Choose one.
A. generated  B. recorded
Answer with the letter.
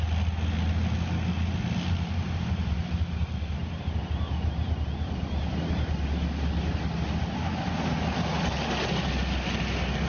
B